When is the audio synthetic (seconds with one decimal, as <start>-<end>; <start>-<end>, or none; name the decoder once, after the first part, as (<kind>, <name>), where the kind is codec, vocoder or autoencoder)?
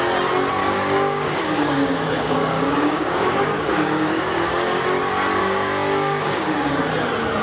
0.6-5.0 (codec, DAC); 5.4-6.8